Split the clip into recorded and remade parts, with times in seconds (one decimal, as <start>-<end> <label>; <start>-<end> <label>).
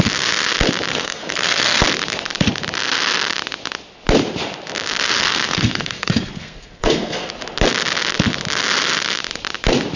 0.0-0.9 recorded; 0.9-1.8 remade; 1.8-5.2 recorded; 5.2-7.3 remade; 7.3-10.0 recorded